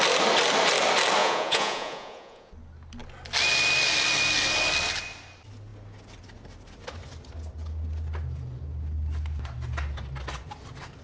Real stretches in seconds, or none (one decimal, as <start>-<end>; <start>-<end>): 0.0-1.2; 2.5-11.0

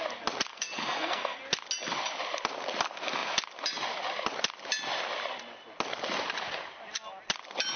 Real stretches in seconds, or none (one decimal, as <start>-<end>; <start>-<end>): 0.0-0.5; 1.4-7.8

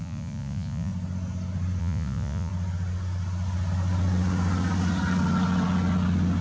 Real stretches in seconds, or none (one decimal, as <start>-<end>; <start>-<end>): 0.9-1.8; 2.5-6.4